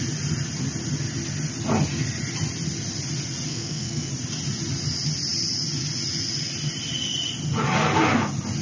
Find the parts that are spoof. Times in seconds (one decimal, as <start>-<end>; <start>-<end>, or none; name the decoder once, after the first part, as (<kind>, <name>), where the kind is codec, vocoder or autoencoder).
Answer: 3.5-4.1 (codec, SNAC)